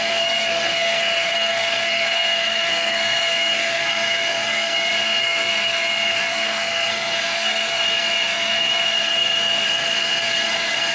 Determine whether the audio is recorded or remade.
remade